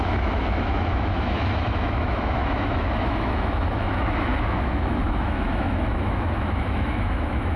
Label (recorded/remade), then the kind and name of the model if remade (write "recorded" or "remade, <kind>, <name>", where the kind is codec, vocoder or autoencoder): remade, autoencoder, DAC-VAE